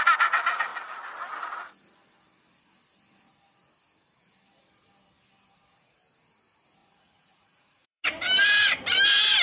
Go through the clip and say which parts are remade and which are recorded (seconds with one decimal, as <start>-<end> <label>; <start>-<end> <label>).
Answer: 0.0-6.8 recorded; 6.8-8.0 remade; 8.0-9.4 recorded